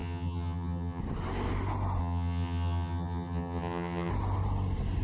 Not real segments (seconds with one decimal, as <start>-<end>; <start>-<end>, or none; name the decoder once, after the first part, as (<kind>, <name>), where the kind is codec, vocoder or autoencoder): 0.0-1.0 (vocoder, HiFi-GAN); 2.0-4.1

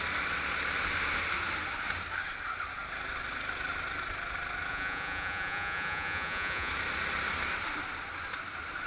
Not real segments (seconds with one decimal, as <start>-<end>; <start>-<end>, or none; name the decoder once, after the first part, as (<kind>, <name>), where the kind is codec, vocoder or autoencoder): 4.7-6.7 (vocoder, Vocos)

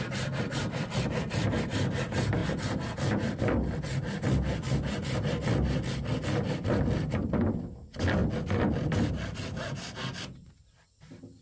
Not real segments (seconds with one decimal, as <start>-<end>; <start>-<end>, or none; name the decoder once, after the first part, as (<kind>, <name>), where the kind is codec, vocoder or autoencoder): none

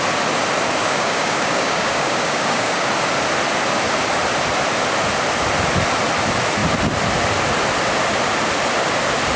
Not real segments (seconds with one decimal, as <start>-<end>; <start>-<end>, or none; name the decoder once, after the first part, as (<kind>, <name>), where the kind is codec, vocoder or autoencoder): 0.8-2.9 (codec, DAC)